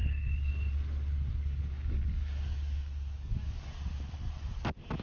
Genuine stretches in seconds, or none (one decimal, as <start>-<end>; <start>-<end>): 0.5-1.4; 3.7-5.0